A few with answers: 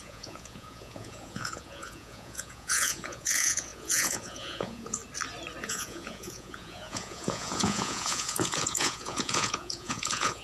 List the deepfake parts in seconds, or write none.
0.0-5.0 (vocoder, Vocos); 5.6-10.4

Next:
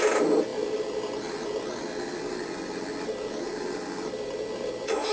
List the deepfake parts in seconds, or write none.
none